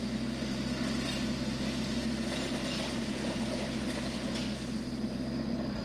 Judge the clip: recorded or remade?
recorded